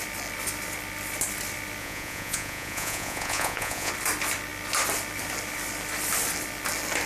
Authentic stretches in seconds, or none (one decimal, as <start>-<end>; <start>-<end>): 0.0-1.8; 3.9-7.1